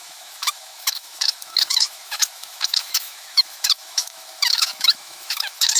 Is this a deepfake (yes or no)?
yes